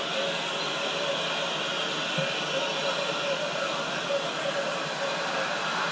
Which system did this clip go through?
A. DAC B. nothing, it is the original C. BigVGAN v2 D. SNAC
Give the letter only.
B